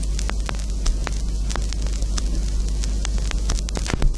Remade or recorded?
recorded